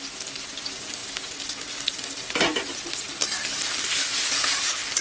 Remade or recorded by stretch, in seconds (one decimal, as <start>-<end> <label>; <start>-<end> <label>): 0.0-5.0 recorded